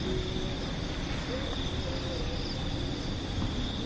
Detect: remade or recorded recorded